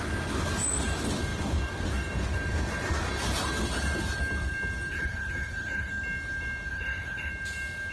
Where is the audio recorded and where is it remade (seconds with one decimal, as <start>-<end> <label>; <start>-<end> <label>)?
0.0-4.9 recorded; 4.9-5.9 remade; 5.9-6.7 recorded; 6.7-7.3 remade; 7.3-7.9 recorded